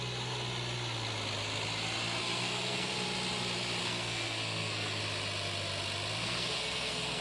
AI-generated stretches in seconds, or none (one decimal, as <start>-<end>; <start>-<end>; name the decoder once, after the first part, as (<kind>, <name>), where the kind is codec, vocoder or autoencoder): 2.2-2.9 (codec, SNAC); 3.8-5.0; 6.2-7.2